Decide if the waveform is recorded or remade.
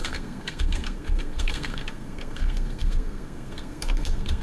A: remade